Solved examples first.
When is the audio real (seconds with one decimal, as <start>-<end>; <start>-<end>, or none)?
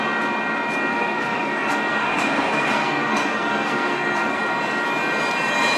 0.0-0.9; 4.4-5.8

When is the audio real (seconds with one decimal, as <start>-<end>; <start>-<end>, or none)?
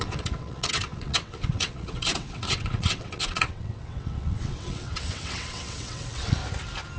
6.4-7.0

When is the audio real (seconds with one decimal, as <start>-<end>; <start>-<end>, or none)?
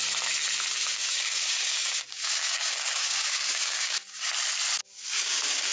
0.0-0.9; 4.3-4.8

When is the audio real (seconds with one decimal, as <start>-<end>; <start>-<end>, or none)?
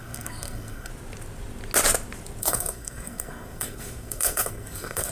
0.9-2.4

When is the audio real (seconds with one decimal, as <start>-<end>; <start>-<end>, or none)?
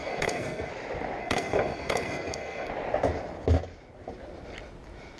0.7-1.2; 2.7-5.2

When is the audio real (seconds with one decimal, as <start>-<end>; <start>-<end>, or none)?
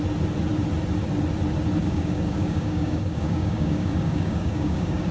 0.0-1.8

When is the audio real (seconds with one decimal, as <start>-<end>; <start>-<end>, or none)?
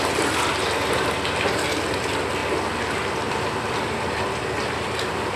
0.0-0.5; 1.1-5.4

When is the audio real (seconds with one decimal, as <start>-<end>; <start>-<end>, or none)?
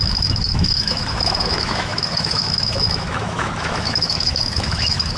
none